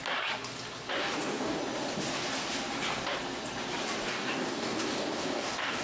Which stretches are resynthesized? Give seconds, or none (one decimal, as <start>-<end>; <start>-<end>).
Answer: 1.0-1.6; 4.1-5.8